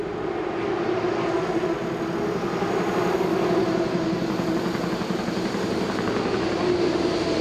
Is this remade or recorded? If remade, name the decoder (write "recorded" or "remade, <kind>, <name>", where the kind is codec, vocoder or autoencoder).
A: recorded